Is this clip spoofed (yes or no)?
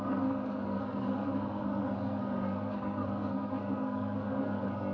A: yes